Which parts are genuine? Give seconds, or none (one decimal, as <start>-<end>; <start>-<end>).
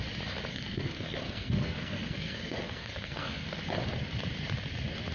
0.0-0.5; 3.6-5.1